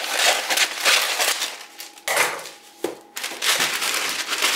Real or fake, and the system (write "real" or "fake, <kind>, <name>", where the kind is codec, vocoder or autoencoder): real